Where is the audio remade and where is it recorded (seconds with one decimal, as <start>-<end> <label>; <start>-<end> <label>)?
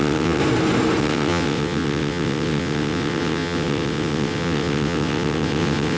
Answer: 0.0-0.4 remade; 0.4-1.0 recorded; 1.0-6.0 remade